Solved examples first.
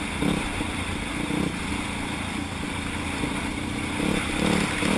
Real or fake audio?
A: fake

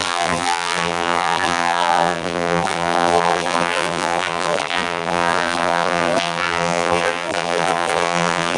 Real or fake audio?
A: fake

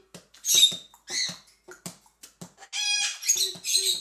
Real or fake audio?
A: real